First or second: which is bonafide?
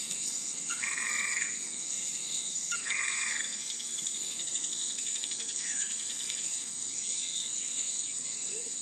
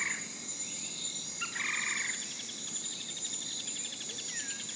second